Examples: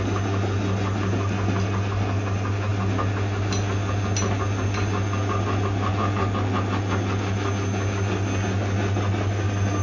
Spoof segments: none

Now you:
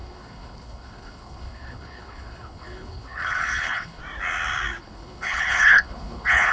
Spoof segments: 0.0-4.0 (codec, HILCodec); 4.8-6.5

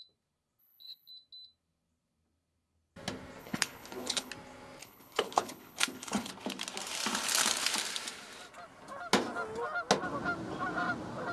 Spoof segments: 0.6-1.1 (codec, HILCodec); 3.4-4.3; 4.8-6.3

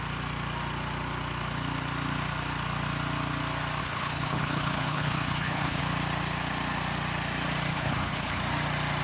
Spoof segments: 3.8-5.8 (codec, HILCodec); 7.7-8.4

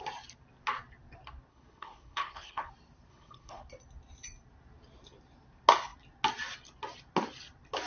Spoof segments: 1.5-2.7 (codec, HILCodec); 3.1-3.6

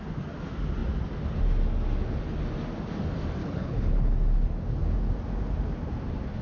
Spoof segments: 3.4-4.1 (codec, HILCodec)

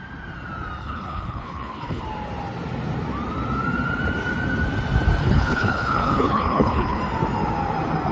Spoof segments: 0.8-2.0 (codec, HILCodec); 5.2-7.0